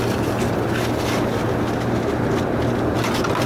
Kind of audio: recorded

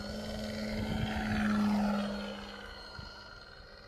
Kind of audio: recorded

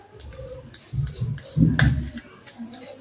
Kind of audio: recorded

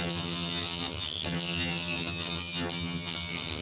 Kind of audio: remade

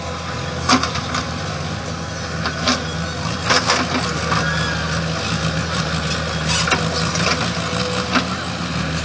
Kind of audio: recorded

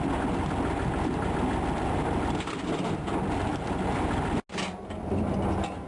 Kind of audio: recorded